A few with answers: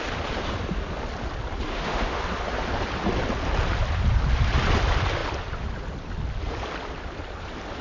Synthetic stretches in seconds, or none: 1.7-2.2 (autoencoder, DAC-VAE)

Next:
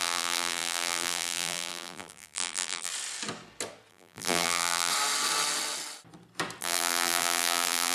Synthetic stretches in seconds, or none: 0.0-2.9 (vocoder, BigVGAN v2); 3.9-4.9; 6.6-7.9

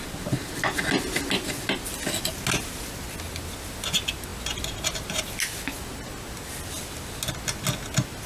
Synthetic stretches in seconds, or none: none

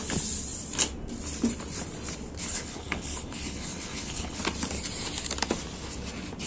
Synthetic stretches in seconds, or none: 2.5-4.4 (codec, HILCodec)

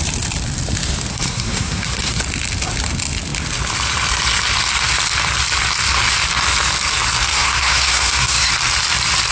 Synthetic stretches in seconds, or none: 1.1-2.2 (codec, SNAC); 7.3-8.5

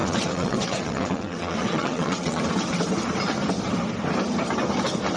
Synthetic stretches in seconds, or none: 0.0-2.4 (vocoder, WaveNeXt)